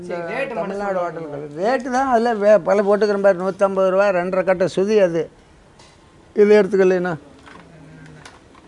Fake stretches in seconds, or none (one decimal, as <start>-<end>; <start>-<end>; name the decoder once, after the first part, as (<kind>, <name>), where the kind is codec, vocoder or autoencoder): none